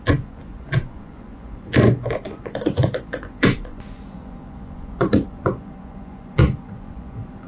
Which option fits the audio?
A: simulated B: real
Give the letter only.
A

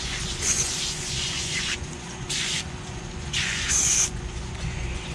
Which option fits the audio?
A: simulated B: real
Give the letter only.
A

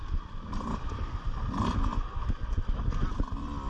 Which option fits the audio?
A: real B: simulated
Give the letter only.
A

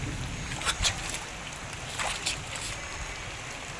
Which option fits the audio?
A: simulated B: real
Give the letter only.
B